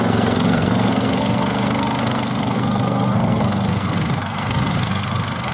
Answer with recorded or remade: remade